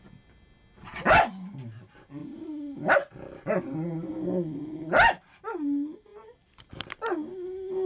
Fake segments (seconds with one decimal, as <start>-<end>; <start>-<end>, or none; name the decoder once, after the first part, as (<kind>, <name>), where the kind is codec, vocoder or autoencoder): none